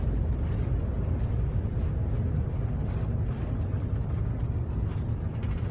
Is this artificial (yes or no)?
no